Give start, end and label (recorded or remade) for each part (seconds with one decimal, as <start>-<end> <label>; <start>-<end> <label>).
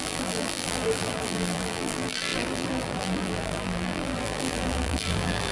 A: 0.0-5.5 remade